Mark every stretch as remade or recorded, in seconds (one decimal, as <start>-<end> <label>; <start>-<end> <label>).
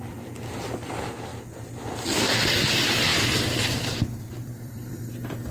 0.0-3.1 recorded; 3.1-5.1 remade; 5.1-5.5 recorded